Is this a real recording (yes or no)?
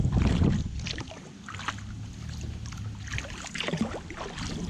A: yes